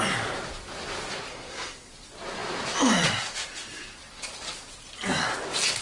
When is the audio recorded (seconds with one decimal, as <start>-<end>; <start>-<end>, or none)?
0.0-1.3; 1.9-5.8